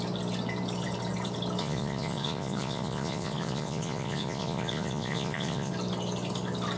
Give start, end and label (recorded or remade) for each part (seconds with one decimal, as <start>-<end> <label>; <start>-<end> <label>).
0.0-1.6 recorded; 1.6-5.7 remade; 5.7-6.8 recorded